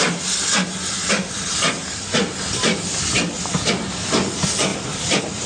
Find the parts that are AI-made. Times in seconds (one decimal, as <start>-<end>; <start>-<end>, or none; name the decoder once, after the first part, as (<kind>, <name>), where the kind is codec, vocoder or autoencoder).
none